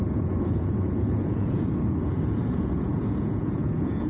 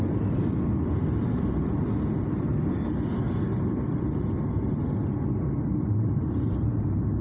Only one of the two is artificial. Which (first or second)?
first